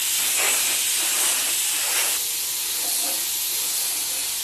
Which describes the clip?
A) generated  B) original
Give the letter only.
B